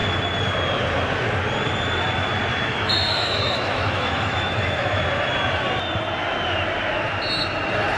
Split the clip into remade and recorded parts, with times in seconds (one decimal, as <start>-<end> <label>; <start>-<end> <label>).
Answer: 0.0-2.5 recorded; 2.5-5.0 remade; 5.0-8.0 recorded